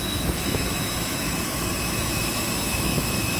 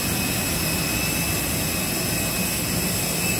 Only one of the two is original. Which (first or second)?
second